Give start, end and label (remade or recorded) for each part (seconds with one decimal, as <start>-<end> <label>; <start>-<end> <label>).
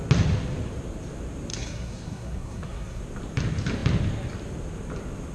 0.0-1.5 recorded; 1.5-3.0 remade; 3.0-5.3 recorded